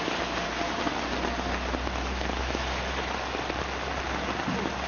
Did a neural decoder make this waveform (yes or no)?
no